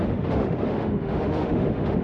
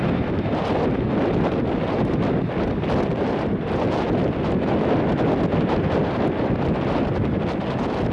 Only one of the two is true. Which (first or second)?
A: second